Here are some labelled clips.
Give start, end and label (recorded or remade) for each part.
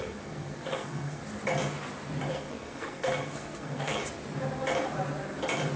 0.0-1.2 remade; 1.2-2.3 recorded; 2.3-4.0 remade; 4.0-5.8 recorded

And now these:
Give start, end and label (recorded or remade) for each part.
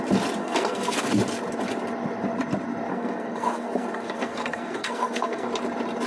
0.0-0.4 recorded; 0.4-1.1 remade; 1.1-2.9 recorded; 2.9-5.5 remade; 5.5-6.1 recorded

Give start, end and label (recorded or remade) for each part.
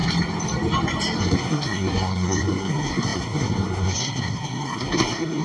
0.0-1.2 recorded; 1.2-5.4 remade